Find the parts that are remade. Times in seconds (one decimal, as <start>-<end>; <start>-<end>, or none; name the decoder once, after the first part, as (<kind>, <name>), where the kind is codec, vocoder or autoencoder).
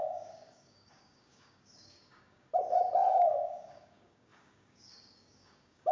0.0-2.5 (codec, DAC); 3.1-5.9